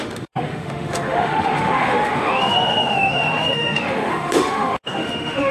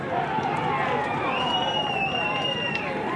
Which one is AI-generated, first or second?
first